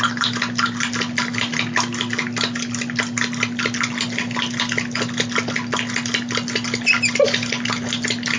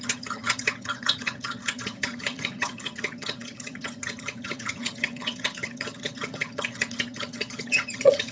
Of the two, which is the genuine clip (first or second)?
first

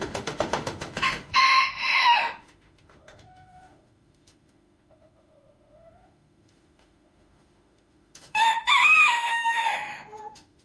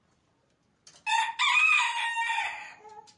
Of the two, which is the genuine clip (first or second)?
second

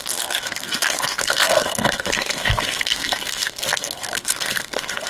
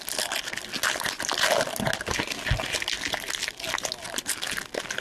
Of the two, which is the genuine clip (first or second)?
second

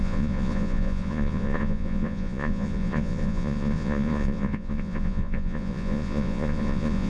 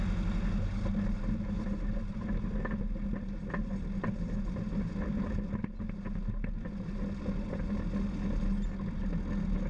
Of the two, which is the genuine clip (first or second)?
second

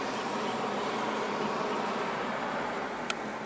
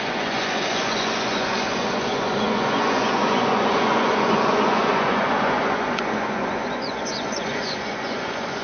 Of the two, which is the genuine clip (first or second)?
first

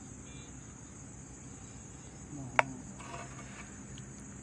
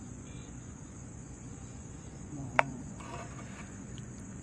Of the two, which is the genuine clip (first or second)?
first